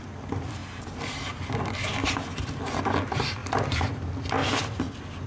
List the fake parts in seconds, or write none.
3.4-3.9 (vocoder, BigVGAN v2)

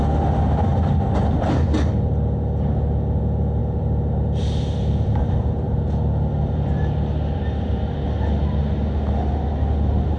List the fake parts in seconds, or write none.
3.6-7.8 (vocoder, BigVGAN v2)